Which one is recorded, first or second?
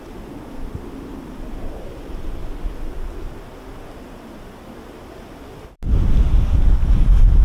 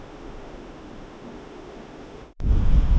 first